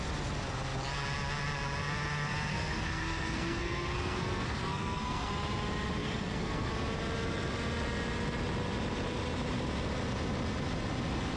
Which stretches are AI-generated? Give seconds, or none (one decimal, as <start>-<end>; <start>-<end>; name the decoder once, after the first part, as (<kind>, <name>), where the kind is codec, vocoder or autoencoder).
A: 2.5-5.3 (codec, SNAC); 6.0-6.7